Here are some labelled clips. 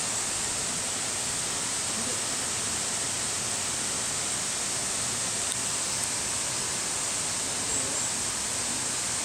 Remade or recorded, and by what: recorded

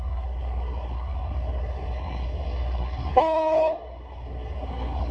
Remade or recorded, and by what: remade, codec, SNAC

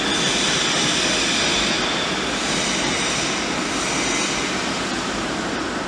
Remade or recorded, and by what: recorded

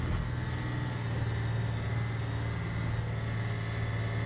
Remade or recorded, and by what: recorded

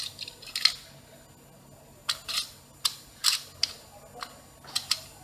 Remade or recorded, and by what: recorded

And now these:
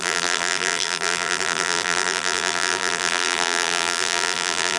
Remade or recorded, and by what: remade, vocoder, BigVGAN v2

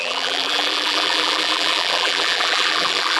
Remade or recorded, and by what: remade, vocoder, BigVGAN v2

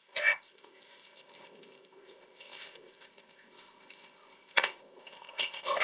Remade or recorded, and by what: remade, codec, ZipCodec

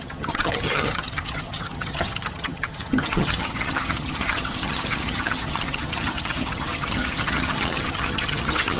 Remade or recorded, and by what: remade, vocoder, HiFi-GAN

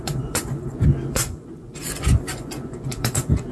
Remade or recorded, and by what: remade, vocoder, Vocos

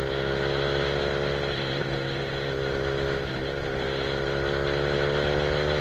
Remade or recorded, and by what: recorded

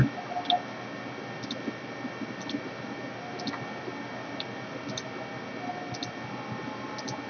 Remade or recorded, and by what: recorded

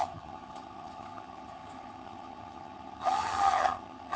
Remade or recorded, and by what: remade, vocoder, HiFi-GAN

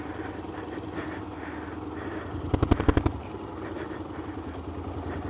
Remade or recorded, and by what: recorded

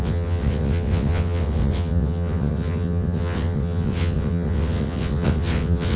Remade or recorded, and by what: remade, vocoder, WaveNeXt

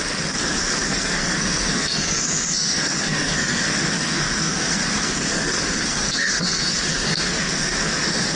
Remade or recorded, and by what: remade, codec, SNAC